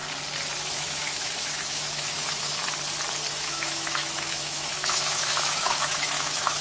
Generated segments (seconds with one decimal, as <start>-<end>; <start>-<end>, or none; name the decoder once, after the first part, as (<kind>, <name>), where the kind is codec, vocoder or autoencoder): 0.6-2.6 (autoencoder, DAC-VAE); 3.3-6.6